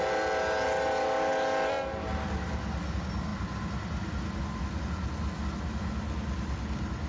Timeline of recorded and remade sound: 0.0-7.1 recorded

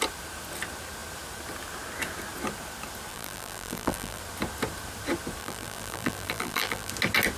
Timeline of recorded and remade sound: 0.0-3.1 recorded; 3.1-4.2 remade; 4.2-5.4 recorded; 5.4-6.9 remade; 6.9-7.4 recorded